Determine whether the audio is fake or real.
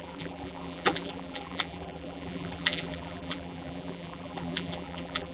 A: fake